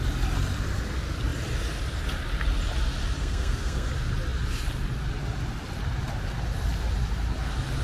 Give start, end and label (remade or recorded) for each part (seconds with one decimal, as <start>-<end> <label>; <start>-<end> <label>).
0.0-3.2 recorded; 3.2-3.9 remade; 3.9-7.8 recorded

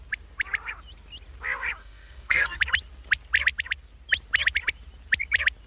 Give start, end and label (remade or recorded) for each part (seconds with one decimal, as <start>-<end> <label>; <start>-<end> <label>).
0.0-1.8 recorded; 1.8-2.6 remade; 2.6-5.7 recorded

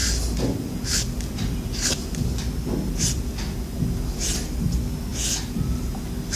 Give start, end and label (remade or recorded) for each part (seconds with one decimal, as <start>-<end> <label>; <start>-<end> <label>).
0.0-6.4 recorded

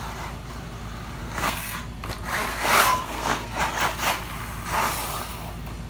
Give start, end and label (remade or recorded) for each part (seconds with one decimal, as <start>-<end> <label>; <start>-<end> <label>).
0.0-1.2 recorded; 1.2-1.8 remade; 1.8-2.5 recorded; 2.5-3.6 remade; 3.6-5.9 recorded

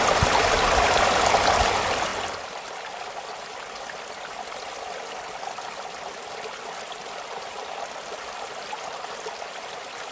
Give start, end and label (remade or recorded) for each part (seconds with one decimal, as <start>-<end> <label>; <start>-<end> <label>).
0.0-10.1 recorded

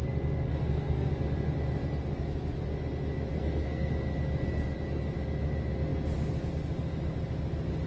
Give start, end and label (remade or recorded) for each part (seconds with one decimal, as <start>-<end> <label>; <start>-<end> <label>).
0.0-0.5 recorded; 0.5-1.1 remade; 1.1-3.3 recorded; 3.3-3.9 remade; 3.9-7.9 recorded

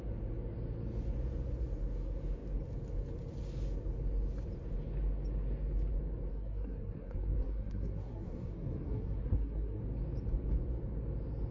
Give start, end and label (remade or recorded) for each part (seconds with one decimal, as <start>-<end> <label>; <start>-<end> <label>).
0.0-6.3 recorded; 6.3-9.8 remade; 9.8-11.5 recorded

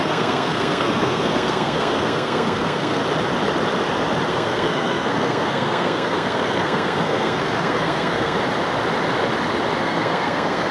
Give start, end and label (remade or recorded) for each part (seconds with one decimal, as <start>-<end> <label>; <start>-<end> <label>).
0.0-3.0 remade; 3.0-4.3 recorded; 4.3-8.4 remade; 8.4-9.8 recorded; 9.8-10.7 remade